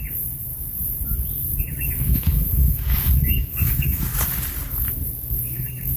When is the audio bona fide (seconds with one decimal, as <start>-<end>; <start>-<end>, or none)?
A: 0.5-1.6; 4.1-4.9